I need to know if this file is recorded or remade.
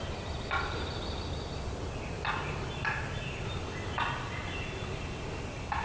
recorded